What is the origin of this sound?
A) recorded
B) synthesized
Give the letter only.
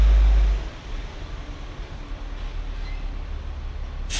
A